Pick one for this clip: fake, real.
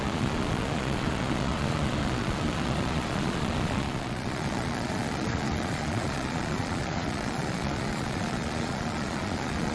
fake